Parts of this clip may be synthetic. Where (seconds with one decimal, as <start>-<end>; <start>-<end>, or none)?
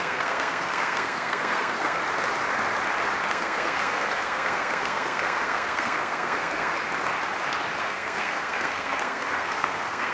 0.0-2.0; 3.3-6.7; 7.8-10.1